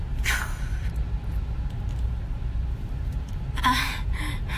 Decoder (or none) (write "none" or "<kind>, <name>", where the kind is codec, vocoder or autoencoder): none